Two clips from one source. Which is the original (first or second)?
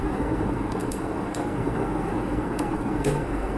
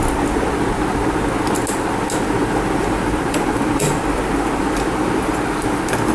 second